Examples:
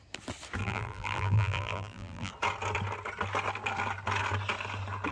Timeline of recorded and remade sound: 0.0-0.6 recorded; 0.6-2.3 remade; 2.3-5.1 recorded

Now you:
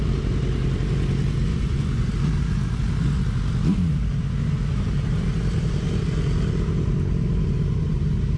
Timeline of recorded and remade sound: 0.0-1.5 recorded; 1.5-2.1 remade; 2.1-8.4 recorded

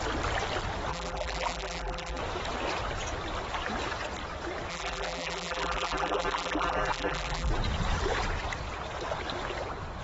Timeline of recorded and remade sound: 0.0-0.9 recorded; 0.9-2.2 remade; 2.2-4.7 recorded; 4.7-7.5 remade; 7.5-10.0 recorded

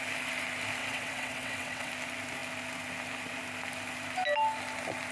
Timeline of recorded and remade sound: 0.0-0.8 recorded; 0.8-1.9 remade; 1.9-5.1 recorded